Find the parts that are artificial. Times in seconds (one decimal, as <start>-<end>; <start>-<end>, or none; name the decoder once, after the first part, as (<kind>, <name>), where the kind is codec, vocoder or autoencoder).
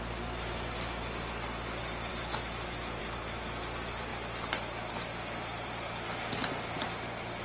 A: 2.1-3.0 (autoencoder, DAC-VAE)